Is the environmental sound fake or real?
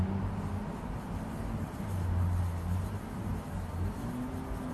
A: fake